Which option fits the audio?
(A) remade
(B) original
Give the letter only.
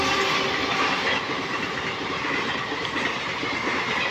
B